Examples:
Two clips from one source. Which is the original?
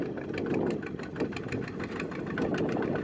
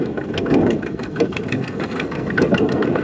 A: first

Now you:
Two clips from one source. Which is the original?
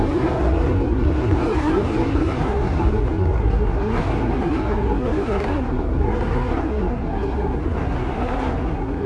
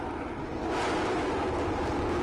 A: second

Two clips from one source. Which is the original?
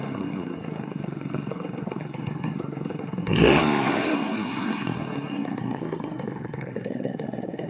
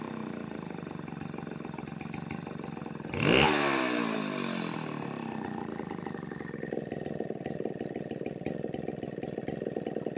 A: second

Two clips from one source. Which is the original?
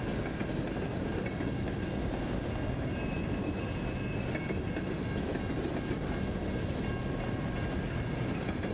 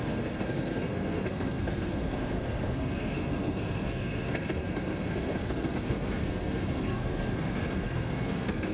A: first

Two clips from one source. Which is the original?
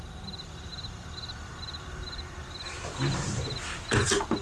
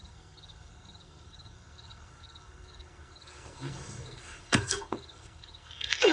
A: first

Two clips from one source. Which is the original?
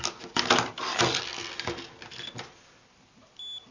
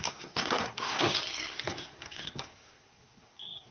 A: first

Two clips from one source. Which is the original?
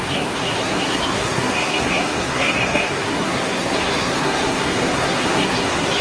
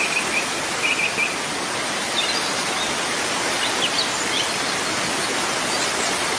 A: second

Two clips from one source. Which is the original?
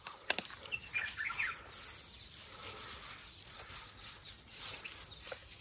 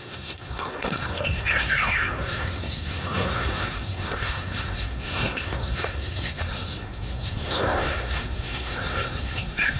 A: first